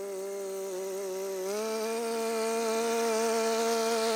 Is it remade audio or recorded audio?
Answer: recorded